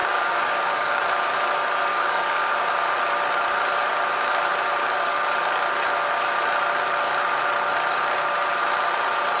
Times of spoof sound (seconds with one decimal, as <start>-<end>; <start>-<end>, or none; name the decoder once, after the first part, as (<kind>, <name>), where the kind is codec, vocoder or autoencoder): 0.0-1.0 (codec, DAC); 1.9-2.5